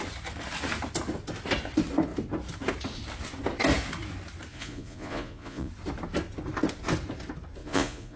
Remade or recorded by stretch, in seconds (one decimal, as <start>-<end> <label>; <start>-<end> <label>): 0.0-4.5 recorded; 4.5-5.7 remade; 5.7-7.6 recorded; 7.6-8.2 remade